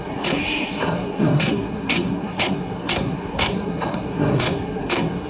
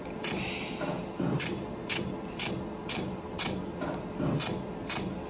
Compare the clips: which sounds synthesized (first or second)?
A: first